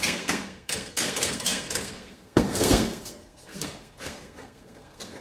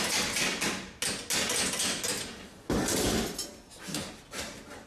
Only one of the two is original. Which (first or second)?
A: second